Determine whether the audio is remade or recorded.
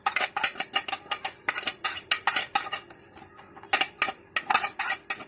recorded